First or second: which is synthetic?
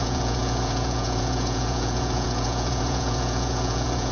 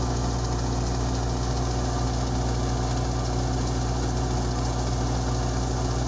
first